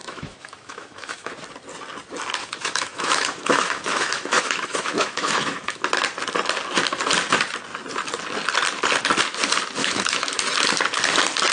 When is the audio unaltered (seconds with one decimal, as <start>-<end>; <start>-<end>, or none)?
1.3-2.4; 5.8-9.8; 10.4-11.5